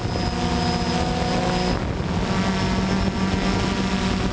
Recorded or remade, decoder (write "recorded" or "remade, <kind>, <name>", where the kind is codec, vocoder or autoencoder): recorded